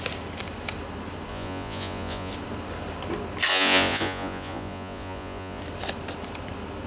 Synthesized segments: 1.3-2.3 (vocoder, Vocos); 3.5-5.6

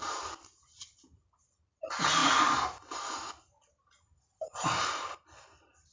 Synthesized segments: none

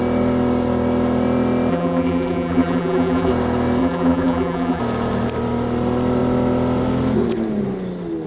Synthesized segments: 1.7-3.3 (vocoder, BigVGAN v2); 3.8-4.8

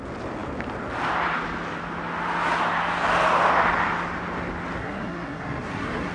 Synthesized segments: 4.8-6.1 (codec, SNAC)

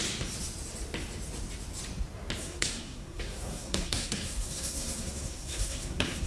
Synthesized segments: 2.4-6.3 (codec, SNAC)

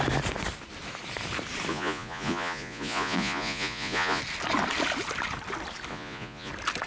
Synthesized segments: 1.7-4.2 (vocoder, Vocos); 5.9-6.5

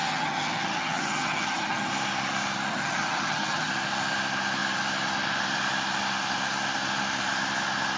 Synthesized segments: 0.0-1.9 (vocoder, HiFi-GAN); 2.7-3.7